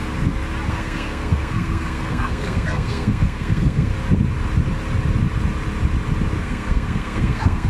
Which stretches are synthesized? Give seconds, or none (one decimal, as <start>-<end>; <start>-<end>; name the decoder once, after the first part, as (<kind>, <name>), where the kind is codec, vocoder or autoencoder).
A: 0.7-3.9 (codec, SNAC); 6.4-7.7